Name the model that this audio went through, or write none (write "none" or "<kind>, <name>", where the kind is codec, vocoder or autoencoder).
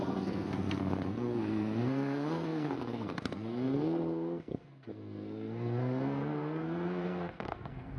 codec, SNAC